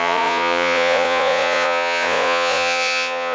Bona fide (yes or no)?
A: no